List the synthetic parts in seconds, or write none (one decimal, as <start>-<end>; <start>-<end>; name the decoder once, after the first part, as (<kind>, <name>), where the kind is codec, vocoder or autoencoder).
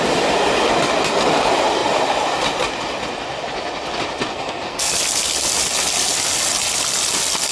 4.3-5.0 (codec, SNAC)